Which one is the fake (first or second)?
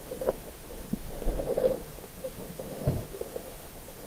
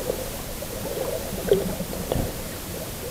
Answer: first